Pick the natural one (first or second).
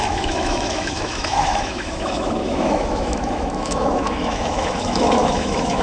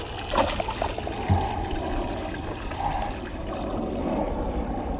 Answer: second